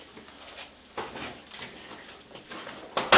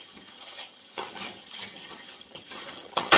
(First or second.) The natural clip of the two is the first